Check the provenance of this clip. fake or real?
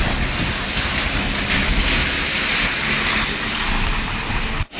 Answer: real